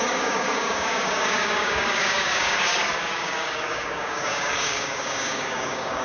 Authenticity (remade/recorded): remade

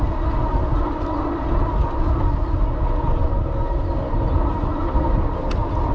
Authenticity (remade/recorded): recorded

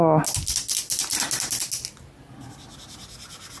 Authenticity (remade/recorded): recorded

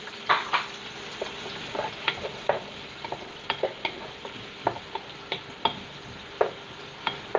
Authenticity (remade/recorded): recorded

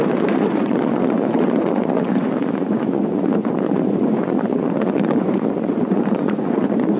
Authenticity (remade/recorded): remade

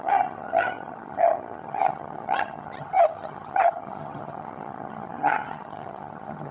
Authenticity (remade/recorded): remade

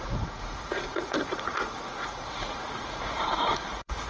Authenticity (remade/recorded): remade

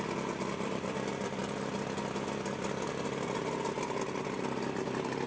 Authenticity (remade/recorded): recorded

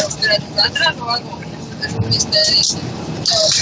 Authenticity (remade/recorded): recorded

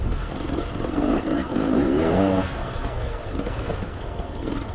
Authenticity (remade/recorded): remade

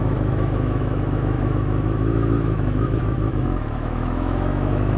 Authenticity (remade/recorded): remade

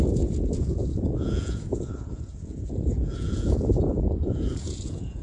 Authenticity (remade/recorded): remade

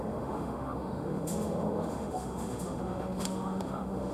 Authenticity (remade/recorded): remade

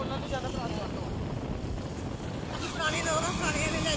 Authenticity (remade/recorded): recorded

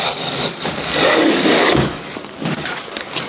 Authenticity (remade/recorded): remade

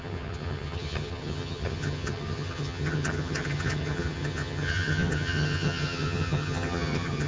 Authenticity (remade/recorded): remade